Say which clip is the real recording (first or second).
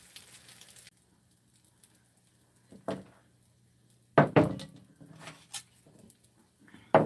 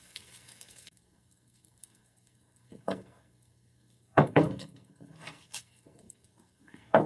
first